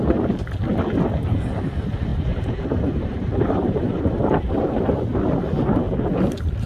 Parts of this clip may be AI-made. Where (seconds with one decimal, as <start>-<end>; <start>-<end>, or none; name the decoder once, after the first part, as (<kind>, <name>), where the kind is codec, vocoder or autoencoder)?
2.1-5.2 (vocoder, BigVGAN v2)